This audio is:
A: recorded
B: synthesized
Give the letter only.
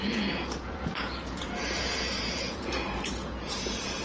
B